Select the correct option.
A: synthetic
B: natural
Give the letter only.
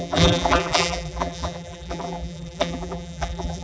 A